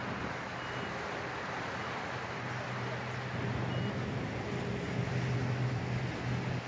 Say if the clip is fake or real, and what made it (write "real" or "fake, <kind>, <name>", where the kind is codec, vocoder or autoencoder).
real